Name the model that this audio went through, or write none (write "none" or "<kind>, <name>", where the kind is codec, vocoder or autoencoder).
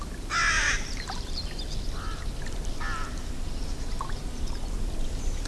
none